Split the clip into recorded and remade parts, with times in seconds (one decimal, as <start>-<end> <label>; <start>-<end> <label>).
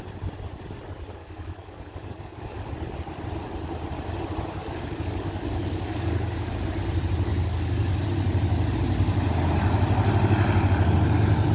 0.0-1.2 recorded; 1.2-2.7 remade; 2.7-4.6 recorded; 4.6-6.5 remade; 6.5-7.3 recorded; 7.3-7.9 remade; 7.9-11.5 recorded